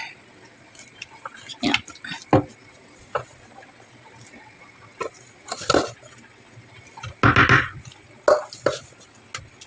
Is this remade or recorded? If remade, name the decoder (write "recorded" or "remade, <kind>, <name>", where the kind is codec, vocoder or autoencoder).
recorded